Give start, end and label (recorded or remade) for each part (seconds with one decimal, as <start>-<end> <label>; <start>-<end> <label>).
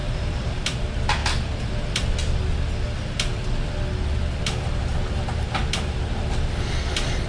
0.0-0.6 remade; 0.6-7.3 recorded